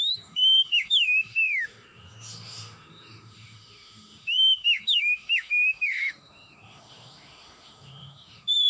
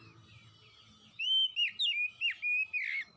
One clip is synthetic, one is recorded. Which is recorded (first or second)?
second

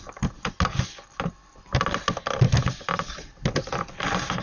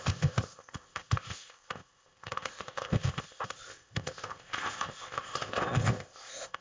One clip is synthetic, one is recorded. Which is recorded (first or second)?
first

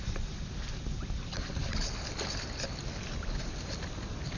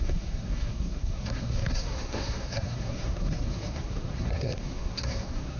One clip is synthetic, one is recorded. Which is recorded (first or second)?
first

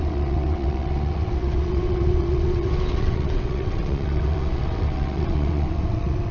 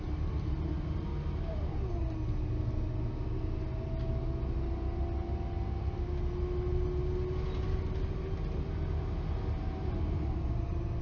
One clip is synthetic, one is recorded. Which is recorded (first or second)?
second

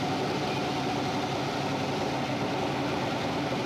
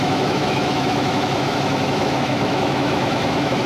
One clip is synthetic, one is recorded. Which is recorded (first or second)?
first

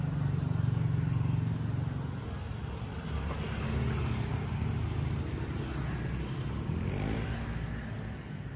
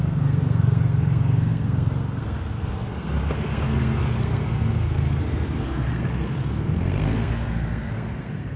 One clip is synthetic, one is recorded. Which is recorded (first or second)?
first